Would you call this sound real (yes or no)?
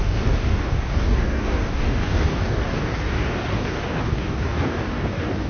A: no